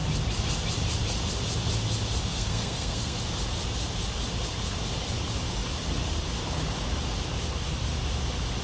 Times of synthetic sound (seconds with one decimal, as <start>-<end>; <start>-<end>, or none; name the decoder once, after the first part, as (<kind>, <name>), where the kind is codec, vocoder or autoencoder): 2.3-3.2 (codec, SNAC)